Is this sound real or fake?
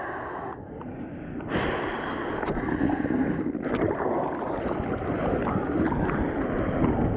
real